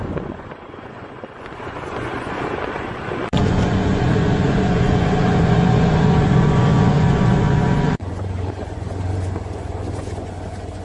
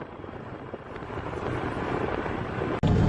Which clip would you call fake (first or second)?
first